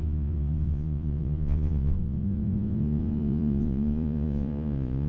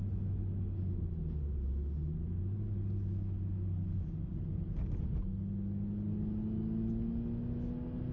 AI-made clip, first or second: first